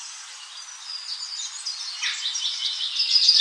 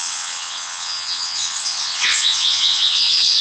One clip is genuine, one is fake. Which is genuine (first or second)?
first